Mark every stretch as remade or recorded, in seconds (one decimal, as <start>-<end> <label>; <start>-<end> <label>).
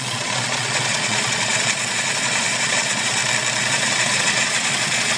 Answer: 0.0-3.2 remade; 3.2-3.7 recorded; 3.7-5.2 remade